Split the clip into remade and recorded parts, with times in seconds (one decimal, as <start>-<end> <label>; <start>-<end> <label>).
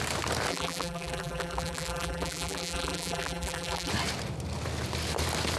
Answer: 0.0-0.5 recorded; 0.5-3.9 remade; 3.9-5.6 recorded